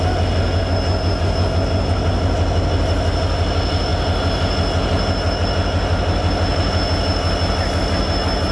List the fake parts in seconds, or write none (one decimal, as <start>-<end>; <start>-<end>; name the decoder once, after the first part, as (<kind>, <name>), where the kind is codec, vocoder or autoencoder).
none